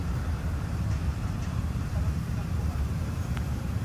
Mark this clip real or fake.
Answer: fake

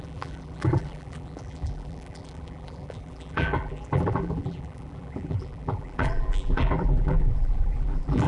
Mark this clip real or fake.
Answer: fake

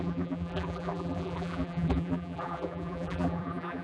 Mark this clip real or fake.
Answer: fake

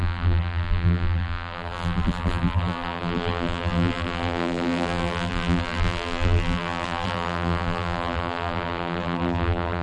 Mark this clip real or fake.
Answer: fake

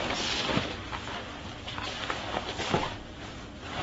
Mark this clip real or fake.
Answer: real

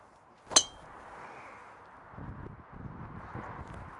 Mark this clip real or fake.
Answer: real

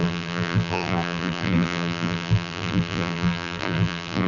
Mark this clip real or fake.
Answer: fake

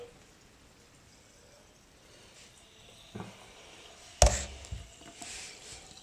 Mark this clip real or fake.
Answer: real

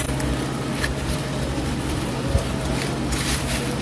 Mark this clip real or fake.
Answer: fake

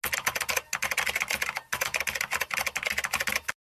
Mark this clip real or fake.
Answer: real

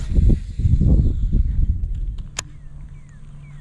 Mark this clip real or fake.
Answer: real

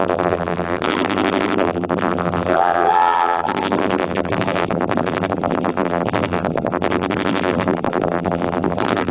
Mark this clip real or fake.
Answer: fake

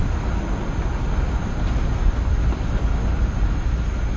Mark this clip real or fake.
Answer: real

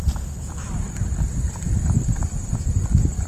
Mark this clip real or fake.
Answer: fake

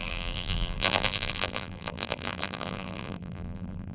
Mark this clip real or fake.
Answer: fake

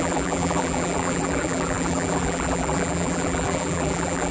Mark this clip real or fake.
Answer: fake